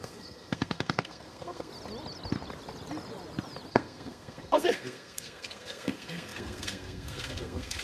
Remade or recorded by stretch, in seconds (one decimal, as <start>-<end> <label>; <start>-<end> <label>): 0.0-1.7 remade; 1.7-3.7 recorded; 3.7-7.8 remade